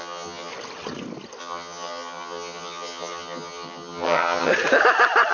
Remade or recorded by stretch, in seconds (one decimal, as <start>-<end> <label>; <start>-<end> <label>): 0.0-0.5 remade; 0.5-1.4 recorded; 1.4-4.5 remade; 4.5-5.3 recorded